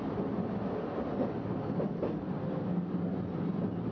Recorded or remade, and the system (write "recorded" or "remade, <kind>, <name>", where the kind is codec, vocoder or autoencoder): recorded